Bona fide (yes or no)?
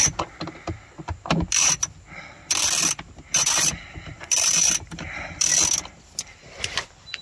yes